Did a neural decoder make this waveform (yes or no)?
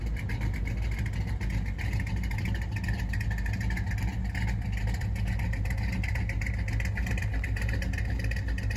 no